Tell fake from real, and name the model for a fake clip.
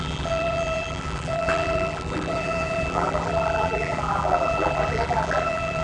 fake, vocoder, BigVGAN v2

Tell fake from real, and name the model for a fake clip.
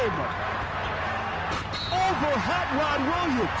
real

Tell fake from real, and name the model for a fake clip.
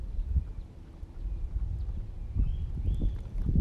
real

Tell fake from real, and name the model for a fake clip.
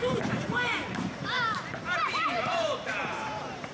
fake, vocoder, BigVGAN v2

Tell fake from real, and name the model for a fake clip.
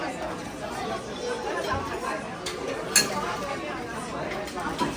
real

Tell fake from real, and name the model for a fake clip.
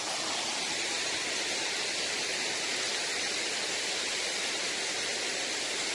fake, vocoder, BigVGAN v2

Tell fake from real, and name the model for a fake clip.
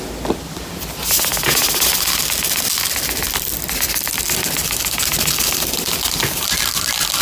real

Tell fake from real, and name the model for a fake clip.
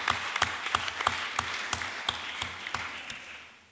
real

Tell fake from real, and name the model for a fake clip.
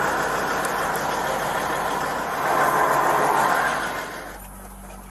real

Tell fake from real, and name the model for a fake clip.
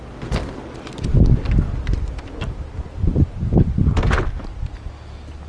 real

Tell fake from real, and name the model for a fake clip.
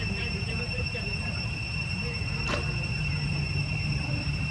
fake, vocoder, BigVGAN v2